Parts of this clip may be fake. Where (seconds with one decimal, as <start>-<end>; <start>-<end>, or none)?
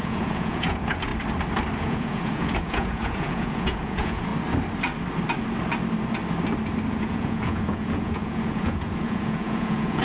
0.0-1.1; 1.8-4.3; 6.9-10.0